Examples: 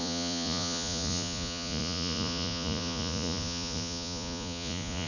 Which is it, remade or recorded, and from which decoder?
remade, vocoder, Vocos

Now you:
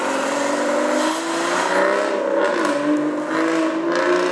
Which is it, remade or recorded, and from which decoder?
recorded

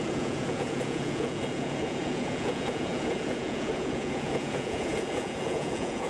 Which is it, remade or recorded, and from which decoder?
remade, vocoder, Vocos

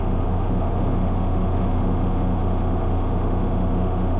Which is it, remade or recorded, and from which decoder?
remade, autoencoder, DAC-VAE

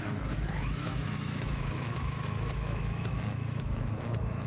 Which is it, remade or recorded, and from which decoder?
remade, autoencoder, DAC-VAE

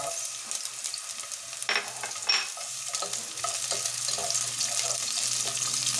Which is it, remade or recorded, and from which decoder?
recorded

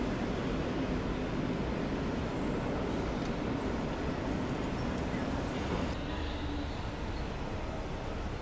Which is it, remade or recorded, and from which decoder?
recorded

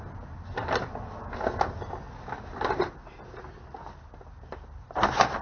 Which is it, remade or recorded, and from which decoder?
recorded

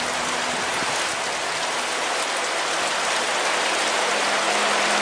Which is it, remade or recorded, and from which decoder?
recorded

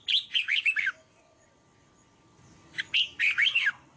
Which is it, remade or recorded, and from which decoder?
recorded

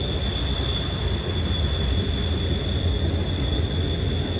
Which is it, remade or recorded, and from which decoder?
recorded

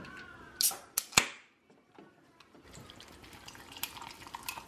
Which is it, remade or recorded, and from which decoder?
recorded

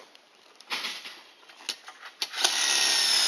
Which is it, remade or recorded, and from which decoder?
recorded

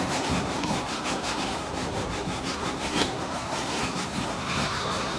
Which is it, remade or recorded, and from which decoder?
remade, codec, SNAC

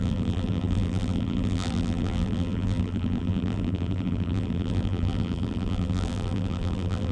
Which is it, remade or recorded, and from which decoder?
remade, vocoder, BigVGAN v2